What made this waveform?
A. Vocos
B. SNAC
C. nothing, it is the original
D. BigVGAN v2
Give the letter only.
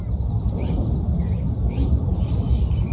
D